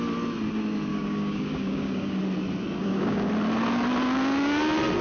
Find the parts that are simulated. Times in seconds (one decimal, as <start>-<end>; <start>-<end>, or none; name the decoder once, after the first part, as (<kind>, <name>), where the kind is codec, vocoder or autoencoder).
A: 0.9-2.2 (codec, DAC); 2.8-3.3